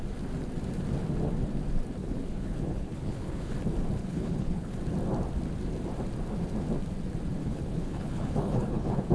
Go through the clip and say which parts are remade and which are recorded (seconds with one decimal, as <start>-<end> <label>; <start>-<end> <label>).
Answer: 0.0-2.0 recorded; 2.0-3.5 remade; 3.5-4.0 recorded; 4.0-4.7 remade; 4.7-7.4 recorded; 7.4-9.1 remade